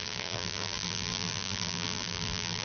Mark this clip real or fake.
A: fake